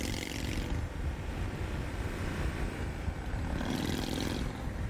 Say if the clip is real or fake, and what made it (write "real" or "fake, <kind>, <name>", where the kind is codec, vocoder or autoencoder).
real